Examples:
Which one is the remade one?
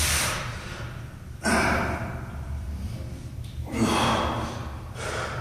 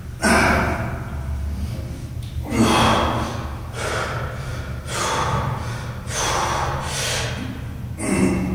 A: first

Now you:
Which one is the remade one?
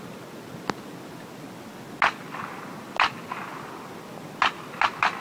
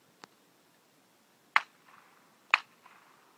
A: second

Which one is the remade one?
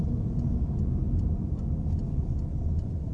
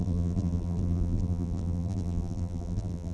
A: second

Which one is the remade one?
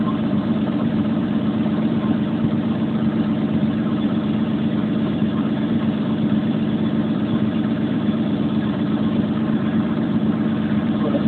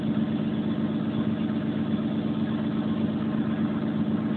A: first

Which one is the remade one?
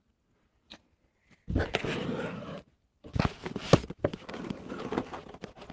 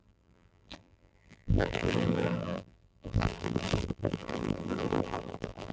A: second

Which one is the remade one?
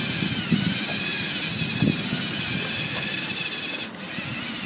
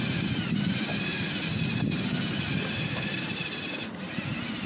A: second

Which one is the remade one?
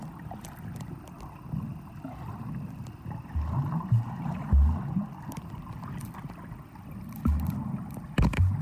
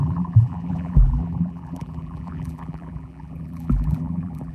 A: second